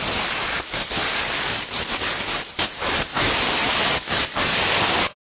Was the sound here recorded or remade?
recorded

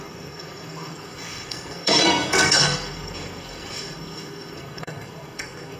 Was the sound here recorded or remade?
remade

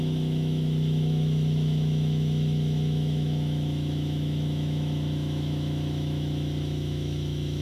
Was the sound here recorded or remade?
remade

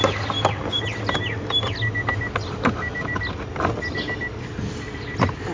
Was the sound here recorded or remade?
recorded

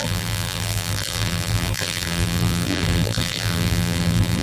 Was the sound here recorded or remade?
remade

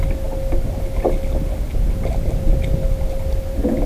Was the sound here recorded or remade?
recorded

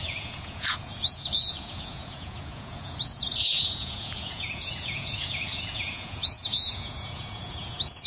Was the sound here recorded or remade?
remade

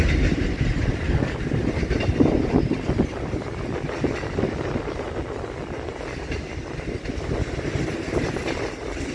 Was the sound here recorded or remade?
recorded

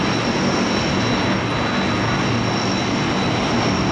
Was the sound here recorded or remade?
recorded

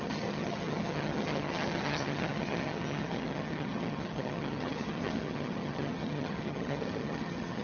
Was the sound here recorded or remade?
remade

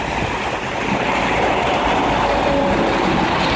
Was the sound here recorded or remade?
recorded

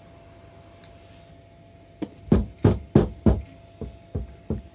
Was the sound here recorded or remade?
recorded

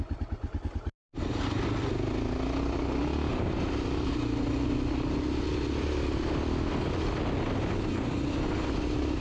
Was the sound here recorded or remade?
recorded